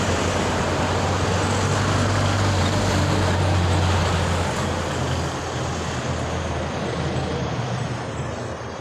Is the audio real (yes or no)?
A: yes